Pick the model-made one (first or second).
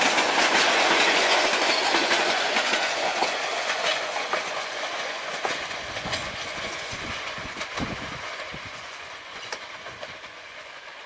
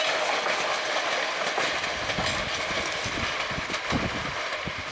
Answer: first